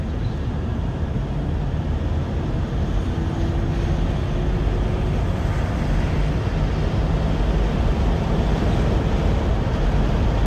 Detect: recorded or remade recorded